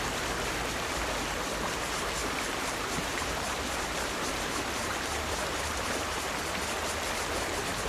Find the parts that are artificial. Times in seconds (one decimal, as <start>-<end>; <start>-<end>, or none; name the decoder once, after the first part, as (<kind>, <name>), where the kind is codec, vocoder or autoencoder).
2.2-6.4 (vocoder, BigVGAN v2)